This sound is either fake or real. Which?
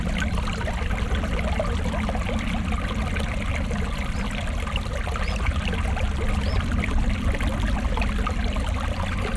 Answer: real